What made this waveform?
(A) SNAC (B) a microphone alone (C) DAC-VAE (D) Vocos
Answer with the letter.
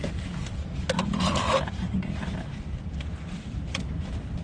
B